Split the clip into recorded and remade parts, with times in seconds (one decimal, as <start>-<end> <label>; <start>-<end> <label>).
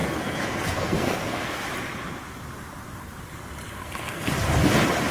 0.0-1.6 remade; 1.6-3.8 recorded; 3.8-4.3 remade; 4.3-5.1 recorded